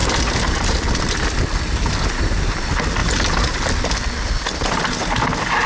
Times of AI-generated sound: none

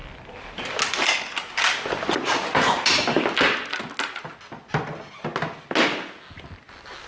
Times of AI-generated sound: none

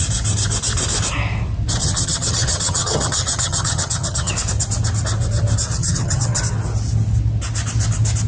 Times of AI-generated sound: 1.8-4.3 (vocoder, HiFi-GAN); 5.8-6.4

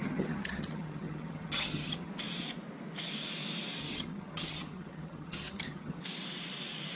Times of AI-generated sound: 0.0-2.1 (vocoder, HiFi-GAN); 3.8-6.0

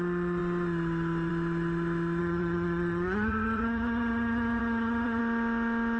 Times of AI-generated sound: 2.2-5.2 (vocoder, HiFi-GAN)

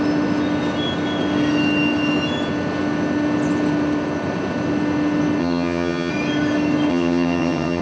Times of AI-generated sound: 5.4-6.1 (vocoder, HiFi-GAN); 6.9-7.8

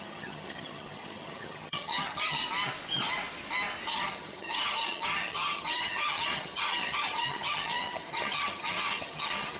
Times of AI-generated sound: 0.0-2.4 (vocoder, HiFi-GAN); 3.9-9.6

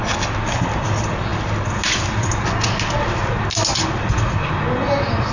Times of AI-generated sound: none